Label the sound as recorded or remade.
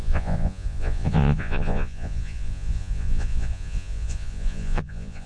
remade